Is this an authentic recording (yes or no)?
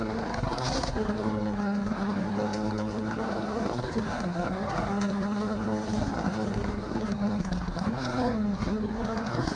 no